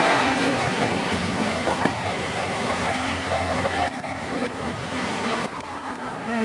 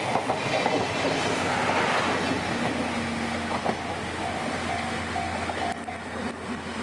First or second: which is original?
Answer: second